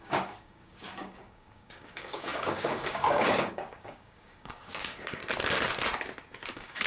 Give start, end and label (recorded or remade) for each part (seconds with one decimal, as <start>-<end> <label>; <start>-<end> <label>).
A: 0.0-5.2 remade; 5.2-6.5 recorded; 6.5-6.9 remade